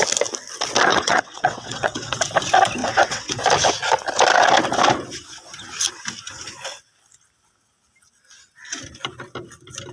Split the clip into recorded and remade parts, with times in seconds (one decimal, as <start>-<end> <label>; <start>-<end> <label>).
0.0-0.9 recorded; 0.9-2.2 remade; 2.2-2.8 recorded; 2.8-3.4 remade; 3.4-9.9 recorded